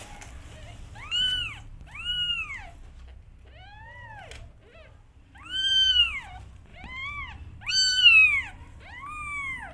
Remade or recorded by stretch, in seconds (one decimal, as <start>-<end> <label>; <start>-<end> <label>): 0.0-9.7 recorded